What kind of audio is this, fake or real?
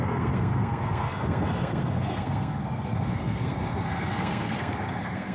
fake